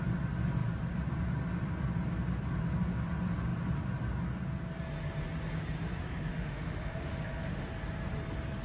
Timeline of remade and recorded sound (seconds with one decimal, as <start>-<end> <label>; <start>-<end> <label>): 0.0-6.3 recorded; 6.3-7.7 remade; 7.7-8.6 recorded